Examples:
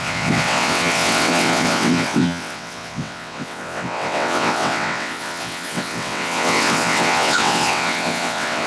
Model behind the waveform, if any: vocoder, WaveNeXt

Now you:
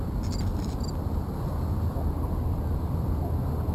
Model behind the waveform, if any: none